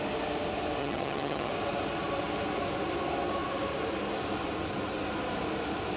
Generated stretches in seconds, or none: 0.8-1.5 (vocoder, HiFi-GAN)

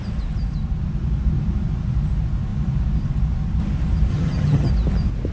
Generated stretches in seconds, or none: 4.1-4.7 (vocoder, HiFi-GAN)

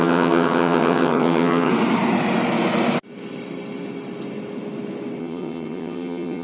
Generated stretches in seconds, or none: 0.0-1.7 (vocoder, HiFi-GAN); 5.2-6.4

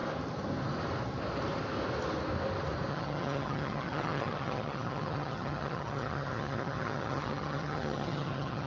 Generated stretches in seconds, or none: 2.9-8.7 (vocoder, HiFi-GAN)

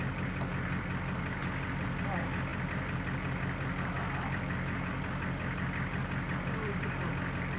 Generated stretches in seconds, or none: none

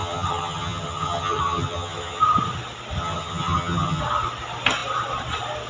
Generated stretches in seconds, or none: 0.0-2.2 (vocoder, HiFi-GAN); 3.0-4.0

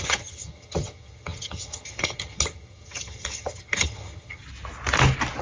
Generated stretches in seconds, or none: 0.0-4.4 (vocoder, HiFi-GAN)